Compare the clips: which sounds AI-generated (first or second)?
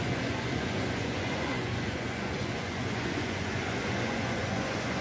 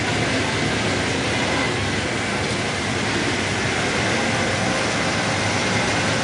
first